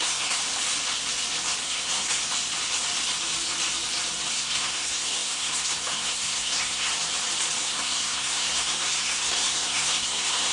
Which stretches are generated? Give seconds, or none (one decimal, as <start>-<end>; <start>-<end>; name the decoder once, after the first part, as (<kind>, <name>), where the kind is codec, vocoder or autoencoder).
0.0-0.4 (codec, SNAC); 1.6-2.2; 4.3-6.9; 7.6-10.5